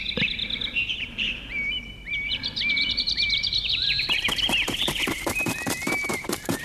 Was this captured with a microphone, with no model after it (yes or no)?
no